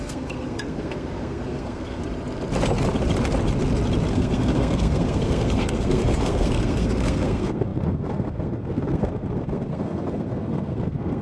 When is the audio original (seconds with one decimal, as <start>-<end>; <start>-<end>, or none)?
2.0-4.1